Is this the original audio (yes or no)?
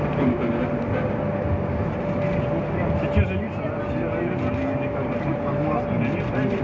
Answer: yes